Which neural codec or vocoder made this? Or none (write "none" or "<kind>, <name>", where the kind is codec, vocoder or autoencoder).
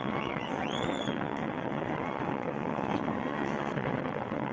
vocoder, WaveNeXt